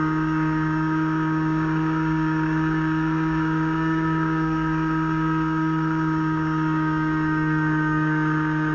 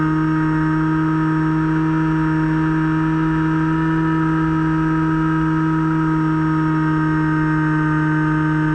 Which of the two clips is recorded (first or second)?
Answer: second